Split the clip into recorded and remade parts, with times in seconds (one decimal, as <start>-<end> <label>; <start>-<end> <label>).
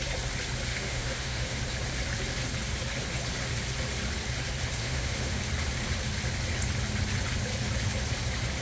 0.0-0.7 recorded; 0.7-1.6 remade; 1.6-4.8 recorded; 4.8-5.4 remade; 5.4-8.6 recorded